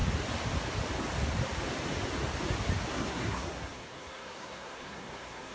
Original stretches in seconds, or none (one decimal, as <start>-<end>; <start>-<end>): 0.0-2.9